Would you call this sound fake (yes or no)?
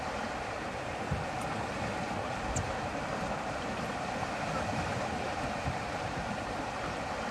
yes